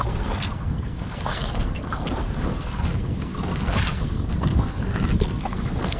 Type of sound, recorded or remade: remade